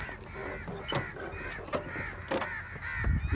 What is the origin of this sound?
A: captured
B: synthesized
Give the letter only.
A